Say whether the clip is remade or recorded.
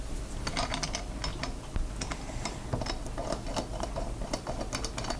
recorded